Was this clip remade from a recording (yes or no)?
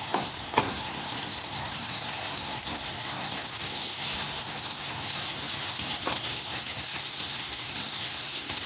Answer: yes